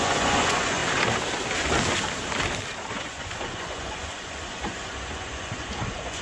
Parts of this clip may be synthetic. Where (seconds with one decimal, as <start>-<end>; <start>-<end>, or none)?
0.0-0.8; 2.9-6.2